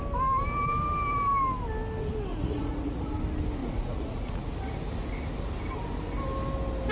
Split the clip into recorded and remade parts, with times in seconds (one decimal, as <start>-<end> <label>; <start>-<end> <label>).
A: 0.0-2.3 recorded; 2.3-3.1 remade; 3.1-3.6 recorded; 3.6-4.5 remade; 4.5-6.9 recorded

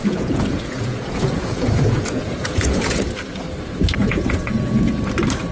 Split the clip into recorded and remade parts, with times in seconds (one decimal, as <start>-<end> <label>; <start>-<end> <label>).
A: 0.0-3.0 remade; 3.0-4.0 recorded; 4.0-5.0 remade; 5.0-5.5 recorded

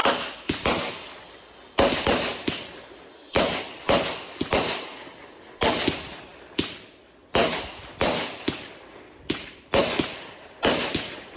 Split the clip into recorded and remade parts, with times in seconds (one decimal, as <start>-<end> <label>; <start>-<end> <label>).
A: 0.0-11.4 recorded